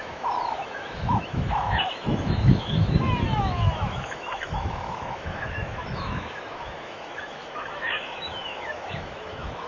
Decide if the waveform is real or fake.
fake